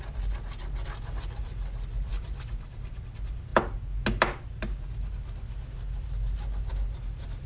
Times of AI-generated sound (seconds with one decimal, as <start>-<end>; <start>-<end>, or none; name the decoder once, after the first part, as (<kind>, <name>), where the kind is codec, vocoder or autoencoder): none